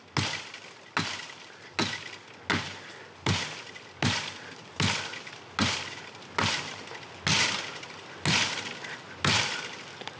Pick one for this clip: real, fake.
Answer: real